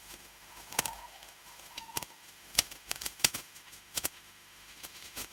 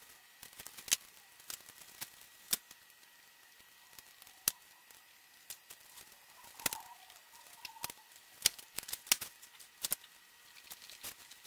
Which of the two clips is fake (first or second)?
first